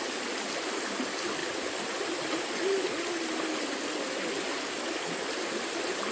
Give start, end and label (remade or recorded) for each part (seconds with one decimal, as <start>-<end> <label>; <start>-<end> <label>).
0.0-6.1 recorded